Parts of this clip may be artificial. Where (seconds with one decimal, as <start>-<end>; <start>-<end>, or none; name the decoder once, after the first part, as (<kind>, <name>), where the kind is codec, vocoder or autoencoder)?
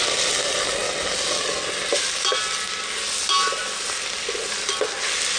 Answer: none